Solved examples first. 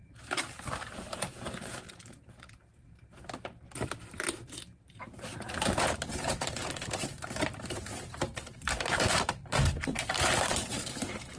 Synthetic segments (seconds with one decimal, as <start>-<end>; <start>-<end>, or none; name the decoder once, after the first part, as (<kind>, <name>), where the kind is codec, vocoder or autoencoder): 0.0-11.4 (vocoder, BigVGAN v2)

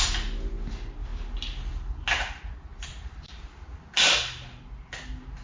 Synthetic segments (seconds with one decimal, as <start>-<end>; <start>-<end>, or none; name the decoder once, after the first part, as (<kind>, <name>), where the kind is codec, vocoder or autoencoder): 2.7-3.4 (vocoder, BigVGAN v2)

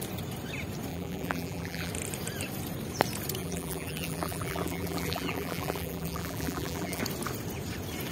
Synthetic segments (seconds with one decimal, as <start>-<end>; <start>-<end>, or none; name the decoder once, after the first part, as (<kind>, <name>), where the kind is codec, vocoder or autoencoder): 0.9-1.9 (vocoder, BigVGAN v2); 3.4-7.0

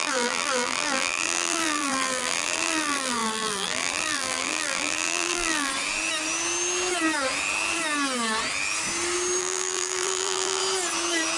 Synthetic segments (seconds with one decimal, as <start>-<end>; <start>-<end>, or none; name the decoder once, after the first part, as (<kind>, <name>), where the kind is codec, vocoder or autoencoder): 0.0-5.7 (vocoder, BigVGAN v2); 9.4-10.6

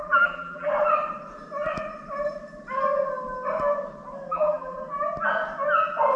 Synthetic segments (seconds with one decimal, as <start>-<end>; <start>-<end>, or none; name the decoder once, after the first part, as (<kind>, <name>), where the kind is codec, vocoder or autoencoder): 0.0-0.7 (vocoder, BigVGAN v2); 4.3-4.8

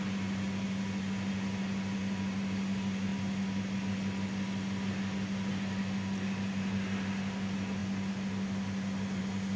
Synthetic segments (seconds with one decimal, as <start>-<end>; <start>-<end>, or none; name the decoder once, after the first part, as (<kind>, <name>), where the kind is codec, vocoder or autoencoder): 0.0-3.1 (vocoder, BigVGAN v2); 5.5-7.8; 9.2-9.6

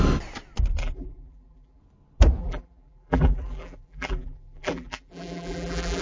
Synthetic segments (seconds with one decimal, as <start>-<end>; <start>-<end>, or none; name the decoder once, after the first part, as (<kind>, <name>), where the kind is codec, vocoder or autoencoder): 0.8-1.8 (vocoder, BigVGAN v2); 2.4-6.0